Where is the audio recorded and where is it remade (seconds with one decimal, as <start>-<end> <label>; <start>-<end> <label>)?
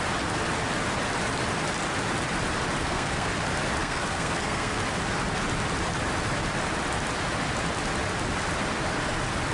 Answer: 0.0-2.8 recorded; 2.8-3.3 remade; 3.3-3.8 recorded; 3.8-4.8 remade; 4.8-9.5 recorded